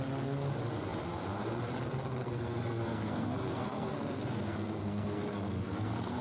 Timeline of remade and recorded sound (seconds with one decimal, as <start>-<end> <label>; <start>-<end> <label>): 0.0-2.2 recorded; 2.2-6.2 remade